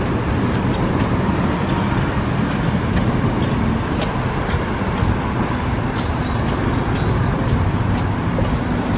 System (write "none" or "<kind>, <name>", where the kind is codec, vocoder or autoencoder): none